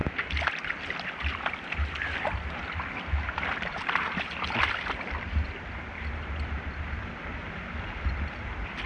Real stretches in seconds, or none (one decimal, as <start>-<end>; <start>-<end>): 0.0-8.9